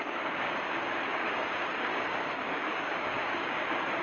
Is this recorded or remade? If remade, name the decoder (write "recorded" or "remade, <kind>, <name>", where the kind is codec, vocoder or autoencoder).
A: remade, codec, DAC